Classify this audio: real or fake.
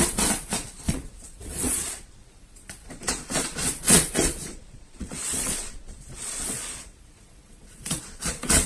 fake